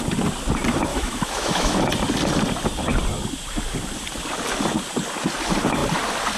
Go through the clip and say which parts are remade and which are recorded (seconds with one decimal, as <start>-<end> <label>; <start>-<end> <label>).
0.0-0.9 recorded; 0.9-1.8 remade; 1.8-6.4 recorded